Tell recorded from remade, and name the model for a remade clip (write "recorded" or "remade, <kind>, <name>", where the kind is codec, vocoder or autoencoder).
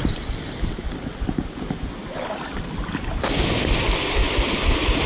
remade, vocoder, BigVGAN v2